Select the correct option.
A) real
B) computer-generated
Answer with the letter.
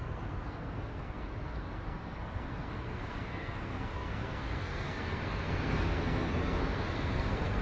B